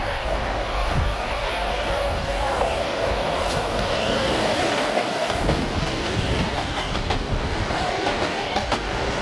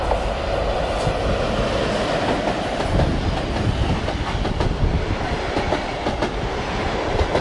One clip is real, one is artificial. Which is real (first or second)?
second